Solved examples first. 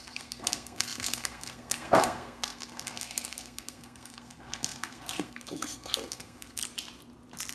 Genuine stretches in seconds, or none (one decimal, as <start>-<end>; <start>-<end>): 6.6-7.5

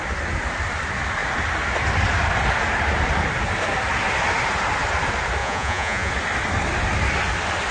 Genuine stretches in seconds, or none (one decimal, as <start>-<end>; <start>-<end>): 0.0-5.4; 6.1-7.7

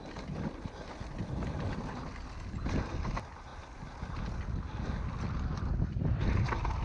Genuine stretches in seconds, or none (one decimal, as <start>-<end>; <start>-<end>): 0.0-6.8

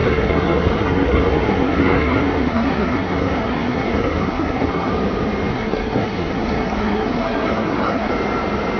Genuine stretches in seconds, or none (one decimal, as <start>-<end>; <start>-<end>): 4.9-5.5; 8.1-8.8

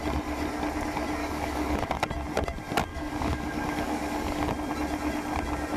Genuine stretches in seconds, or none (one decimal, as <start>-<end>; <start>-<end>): 0.0-1.2; 1.9-2.9; 4.5-5.8

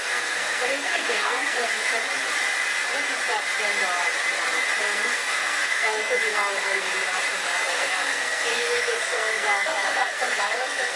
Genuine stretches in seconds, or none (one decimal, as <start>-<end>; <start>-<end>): 1.9-4.8; 6.9-7.7